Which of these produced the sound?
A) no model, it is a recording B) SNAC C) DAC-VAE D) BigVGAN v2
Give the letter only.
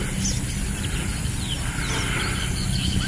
A